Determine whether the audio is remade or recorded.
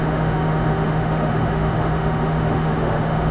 remade